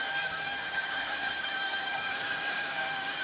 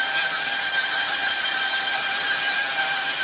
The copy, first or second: first